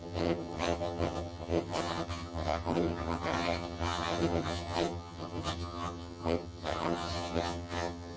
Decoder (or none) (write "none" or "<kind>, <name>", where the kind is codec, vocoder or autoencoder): vocoder, HiFi-GAN